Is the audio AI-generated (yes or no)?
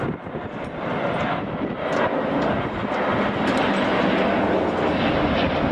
no